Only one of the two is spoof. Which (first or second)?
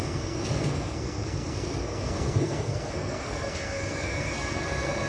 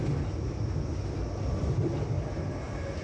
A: first